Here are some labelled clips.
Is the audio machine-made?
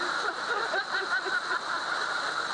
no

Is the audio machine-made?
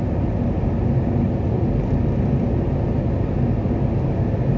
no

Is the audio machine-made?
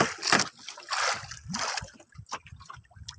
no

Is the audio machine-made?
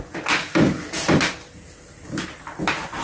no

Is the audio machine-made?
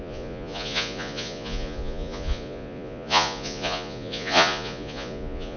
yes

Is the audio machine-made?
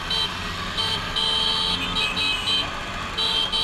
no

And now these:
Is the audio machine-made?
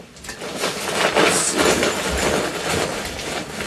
no